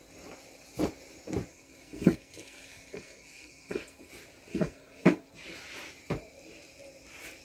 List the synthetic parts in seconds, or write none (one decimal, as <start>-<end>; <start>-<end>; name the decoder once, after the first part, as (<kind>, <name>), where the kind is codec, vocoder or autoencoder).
1.5-4.1 (codec, SNAC); 4.5-5.3